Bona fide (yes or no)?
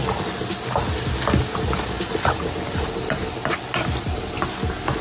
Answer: yes